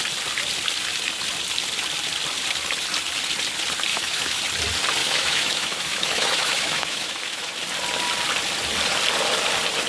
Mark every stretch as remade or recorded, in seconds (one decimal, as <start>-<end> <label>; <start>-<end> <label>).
0.0-3.9 recorded; 3.9-4.4 remade; 4.4-5.0 recorded; 5.0-7.5 remade; 7.5-9.9 recorded